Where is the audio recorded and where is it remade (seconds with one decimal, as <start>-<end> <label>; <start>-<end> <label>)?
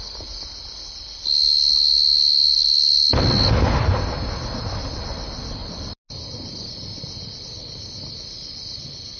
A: 0.0-9.2 recorded